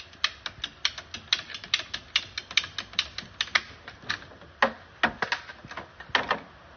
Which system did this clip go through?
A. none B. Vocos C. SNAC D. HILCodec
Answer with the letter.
A